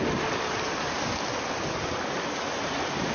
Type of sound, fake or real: real